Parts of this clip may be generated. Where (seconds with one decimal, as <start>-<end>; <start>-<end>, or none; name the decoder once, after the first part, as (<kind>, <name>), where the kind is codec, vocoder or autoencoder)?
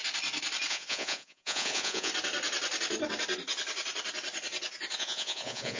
0.7-2.1 (vocoder, Vocos); 5.0-5.8